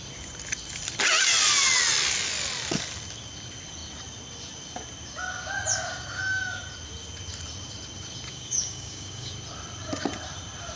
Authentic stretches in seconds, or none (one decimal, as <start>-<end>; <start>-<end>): 0.0-8.3; 9.3-10.8